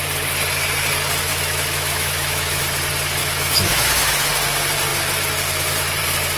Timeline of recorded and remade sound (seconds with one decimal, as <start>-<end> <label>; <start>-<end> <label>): 0.0-1.3 recorded; 1.3-2.6 remade; 2.6-3.2 recorded; 3.2-4.3 remade; 4.3-6.4 recorded